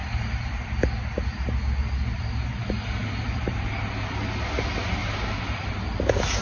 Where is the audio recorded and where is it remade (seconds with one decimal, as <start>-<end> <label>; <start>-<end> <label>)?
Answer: 0.0-0.7 remade; 0.7-3.0 recorded; 3.0-3.7 remade; 3.7-5.0 recorded; 5.0-5.7 remade; 5.7-6.4 recorded